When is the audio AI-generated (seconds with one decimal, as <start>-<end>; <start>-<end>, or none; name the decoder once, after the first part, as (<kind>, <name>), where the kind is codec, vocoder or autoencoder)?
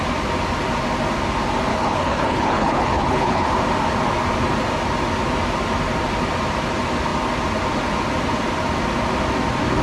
1.7-3.5 (codec, HILCodec)